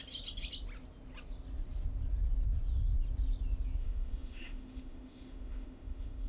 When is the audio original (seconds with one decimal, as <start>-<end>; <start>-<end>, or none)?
0.0-3.8